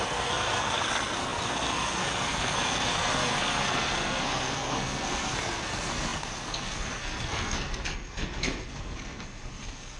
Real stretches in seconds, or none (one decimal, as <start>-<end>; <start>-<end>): none